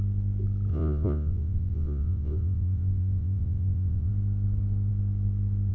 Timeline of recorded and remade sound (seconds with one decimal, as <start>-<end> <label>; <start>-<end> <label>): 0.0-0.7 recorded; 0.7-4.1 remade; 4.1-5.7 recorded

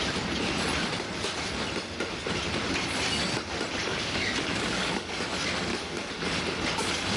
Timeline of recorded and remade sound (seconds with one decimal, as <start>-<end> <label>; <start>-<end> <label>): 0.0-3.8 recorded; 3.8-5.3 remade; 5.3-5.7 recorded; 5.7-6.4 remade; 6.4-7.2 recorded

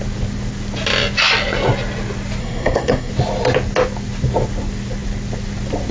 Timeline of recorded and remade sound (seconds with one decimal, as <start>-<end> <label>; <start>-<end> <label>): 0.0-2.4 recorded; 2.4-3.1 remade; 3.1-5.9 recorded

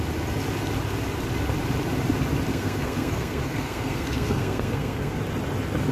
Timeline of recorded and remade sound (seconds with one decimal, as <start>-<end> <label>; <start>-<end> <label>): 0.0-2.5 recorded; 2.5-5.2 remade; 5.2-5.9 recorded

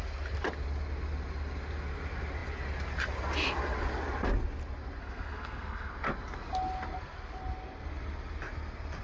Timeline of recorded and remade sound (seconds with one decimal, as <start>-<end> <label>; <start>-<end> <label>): 0.0-5.0 recorded; 5.0-5.9 remade; 5.9-9.0 recorded

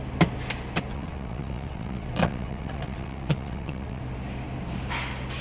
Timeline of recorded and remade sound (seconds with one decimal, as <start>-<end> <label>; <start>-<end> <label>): 0.0-0.9 recorded; 0.9-4.0 remade; 4.0-5.4 recorded

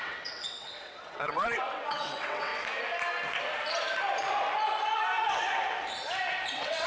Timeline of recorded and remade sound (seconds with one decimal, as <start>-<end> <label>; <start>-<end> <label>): 0.0-2.5 remade; 2.5-6.5 recorded; 6.5-6.9 remade